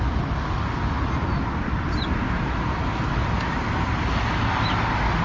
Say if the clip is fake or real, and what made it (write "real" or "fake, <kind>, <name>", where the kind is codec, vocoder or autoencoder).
real